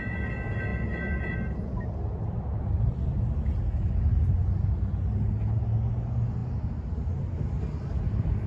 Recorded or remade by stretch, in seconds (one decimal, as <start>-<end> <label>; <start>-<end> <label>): 0.0-8.5 recorded